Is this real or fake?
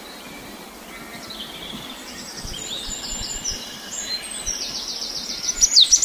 fake